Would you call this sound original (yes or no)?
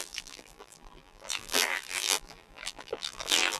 no